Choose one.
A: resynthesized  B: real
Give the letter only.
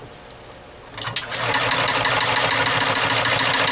B